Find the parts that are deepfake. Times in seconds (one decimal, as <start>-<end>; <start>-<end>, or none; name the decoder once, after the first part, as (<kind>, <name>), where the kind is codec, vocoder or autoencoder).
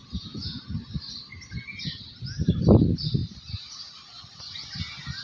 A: 0.0-0.6 (vocoder, Vocos)